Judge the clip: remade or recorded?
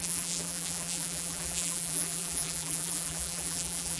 remade